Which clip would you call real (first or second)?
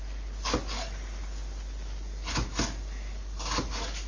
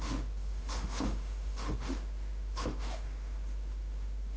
first